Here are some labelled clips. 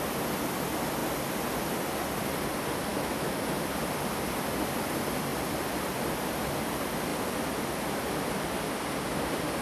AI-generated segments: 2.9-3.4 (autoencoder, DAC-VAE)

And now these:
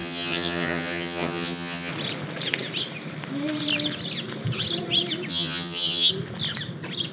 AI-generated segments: 0.0-1.9 (vocoder, HiFi-GAN); 5.3-6.1

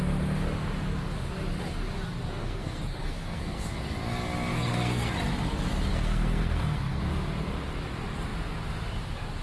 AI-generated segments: 2.4-3.8 (codec, SNAC); 4.5-5.1; 5.9-7.0

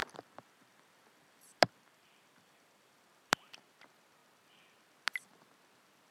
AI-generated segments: 0.0-3.7 (vocoder, BigVGAN v2)